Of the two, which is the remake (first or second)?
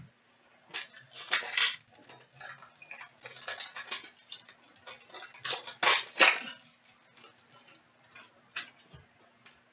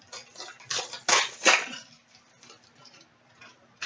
second